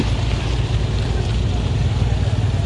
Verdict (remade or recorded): recorded